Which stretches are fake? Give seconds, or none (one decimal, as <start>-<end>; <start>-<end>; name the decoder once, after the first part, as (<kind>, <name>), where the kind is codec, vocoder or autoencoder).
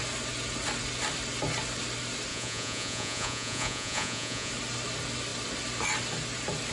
2.3-4.5 (vocoder, Vocos)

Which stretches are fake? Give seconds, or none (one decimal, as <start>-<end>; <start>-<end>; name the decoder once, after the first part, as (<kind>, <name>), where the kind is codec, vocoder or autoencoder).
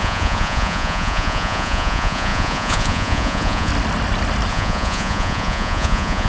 0.0-3.7 (vocoder, Vocos); 4.5-6.3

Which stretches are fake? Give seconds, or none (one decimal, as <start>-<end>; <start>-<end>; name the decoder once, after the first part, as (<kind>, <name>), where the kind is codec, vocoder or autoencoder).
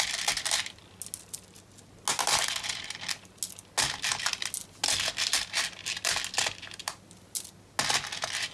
none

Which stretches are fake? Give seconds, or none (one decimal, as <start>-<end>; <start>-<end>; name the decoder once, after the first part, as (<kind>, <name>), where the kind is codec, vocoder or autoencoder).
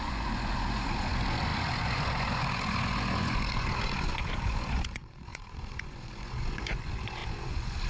0.0-7.9 (vocoder, Vocos)